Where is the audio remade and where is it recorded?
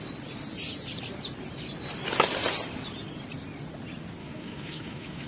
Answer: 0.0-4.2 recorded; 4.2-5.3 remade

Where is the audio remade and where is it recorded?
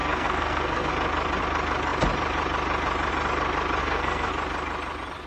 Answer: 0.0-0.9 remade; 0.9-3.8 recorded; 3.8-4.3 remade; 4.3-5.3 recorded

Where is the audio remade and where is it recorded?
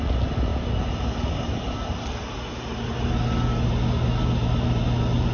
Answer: 0.0-5.3 recorded